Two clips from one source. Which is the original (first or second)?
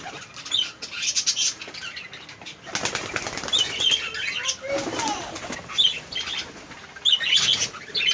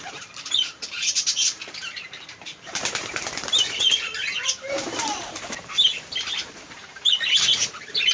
first